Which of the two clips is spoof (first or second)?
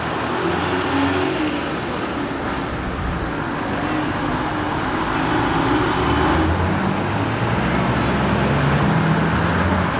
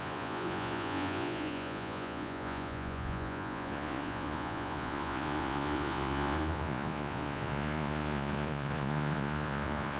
second